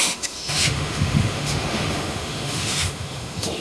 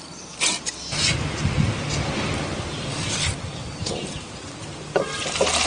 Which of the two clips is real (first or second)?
second